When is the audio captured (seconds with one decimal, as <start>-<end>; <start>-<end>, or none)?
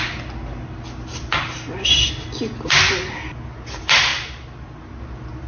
0.0-5.5